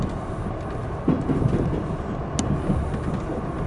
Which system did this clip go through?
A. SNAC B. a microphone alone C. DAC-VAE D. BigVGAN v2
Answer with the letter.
B